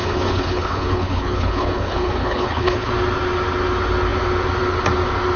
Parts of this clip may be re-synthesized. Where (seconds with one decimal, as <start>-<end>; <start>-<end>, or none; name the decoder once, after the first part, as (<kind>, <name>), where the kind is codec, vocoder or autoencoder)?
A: 0.0-2.9 (codec, HILCodec)